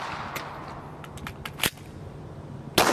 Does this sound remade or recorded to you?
recorded